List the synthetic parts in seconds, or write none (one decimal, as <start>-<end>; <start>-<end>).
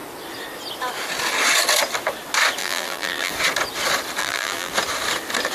2.6-3.3; 4.2-4.7